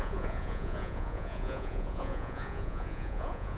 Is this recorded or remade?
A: remade